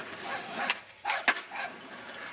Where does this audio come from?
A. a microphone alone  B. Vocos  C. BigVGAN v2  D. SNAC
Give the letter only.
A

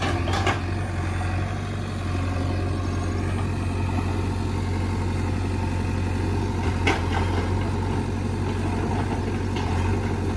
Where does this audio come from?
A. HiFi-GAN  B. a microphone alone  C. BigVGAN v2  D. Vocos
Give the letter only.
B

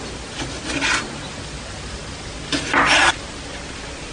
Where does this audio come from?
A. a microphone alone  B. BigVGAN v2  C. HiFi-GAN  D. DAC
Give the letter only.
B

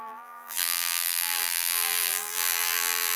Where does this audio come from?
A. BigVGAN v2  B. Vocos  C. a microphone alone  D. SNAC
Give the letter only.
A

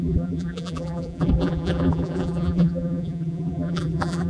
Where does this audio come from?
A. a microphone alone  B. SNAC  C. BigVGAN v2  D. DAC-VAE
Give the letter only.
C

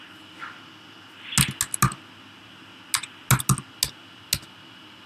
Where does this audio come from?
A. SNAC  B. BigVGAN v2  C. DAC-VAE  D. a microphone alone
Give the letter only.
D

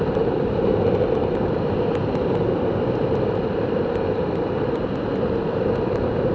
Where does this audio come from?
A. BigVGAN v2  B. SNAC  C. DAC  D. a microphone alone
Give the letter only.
A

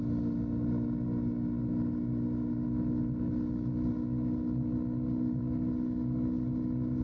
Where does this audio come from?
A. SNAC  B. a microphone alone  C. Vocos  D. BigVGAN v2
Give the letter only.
B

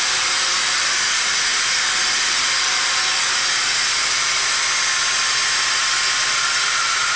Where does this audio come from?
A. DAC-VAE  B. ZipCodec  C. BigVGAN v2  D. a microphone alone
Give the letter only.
C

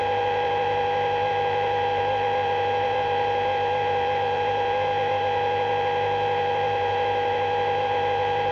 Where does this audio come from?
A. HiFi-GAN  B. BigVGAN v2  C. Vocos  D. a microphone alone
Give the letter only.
B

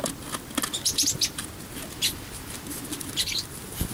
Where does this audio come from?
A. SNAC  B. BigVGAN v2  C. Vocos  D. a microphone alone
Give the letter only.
D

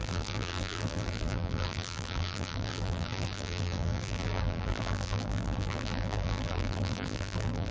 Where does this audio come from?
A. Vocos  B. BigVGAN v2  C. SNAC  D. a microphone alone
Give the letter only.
B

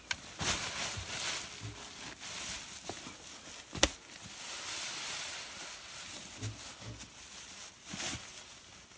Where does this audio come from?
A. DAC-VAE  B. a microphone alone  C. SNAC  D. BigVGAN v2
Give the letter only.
B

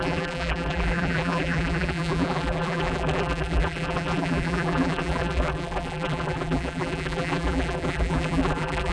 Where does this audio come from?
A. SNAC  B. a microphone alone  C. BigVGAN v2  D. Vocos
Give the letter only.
C